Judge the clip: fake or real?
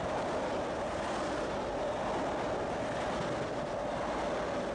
real